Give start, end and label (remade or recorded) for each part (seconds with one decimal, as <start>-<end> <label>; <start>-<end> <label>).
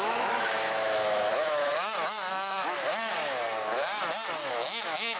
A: 0.0-1.7 remade; 1.7-2.3 recorded; 2.3-2.9 remade; 2.9-4.5 recorded; 4.5-5.2 remade